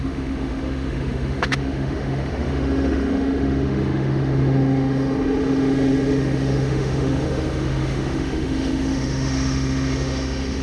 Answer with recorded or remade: remade